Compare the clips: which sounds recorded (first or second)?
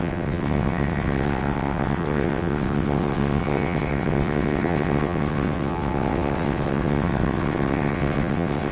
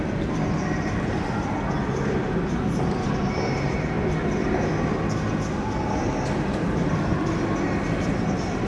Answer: second